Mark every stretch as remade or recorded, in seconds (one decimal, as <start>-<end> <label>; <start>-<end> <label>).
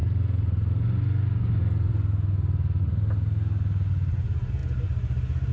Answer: 0.0-5.5 recorded